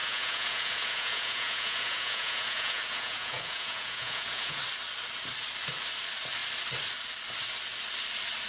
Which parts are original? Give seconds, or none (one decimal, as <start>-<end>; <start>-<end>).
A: 4.6-8.5